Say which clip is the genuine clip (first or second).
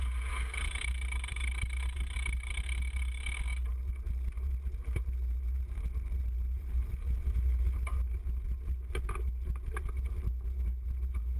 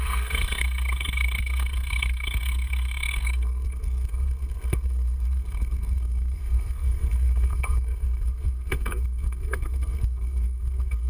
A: first